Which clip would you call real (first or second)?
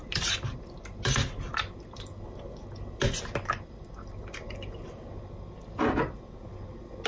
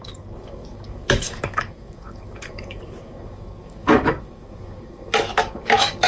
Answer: first